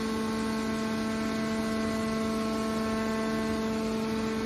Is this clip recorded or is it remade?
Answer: recorded